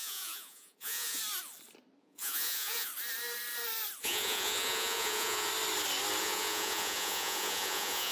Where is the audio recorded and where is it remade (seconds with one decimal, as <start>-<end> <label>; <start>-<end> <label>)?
0.0-1.2 remade; 1.2-2.0 recorded; 2.0-2.9 remade; 2.9-4.0 recorded; 4.0-5.5 remade; 5.5-6.2 recorded; 6.2-8.1 remade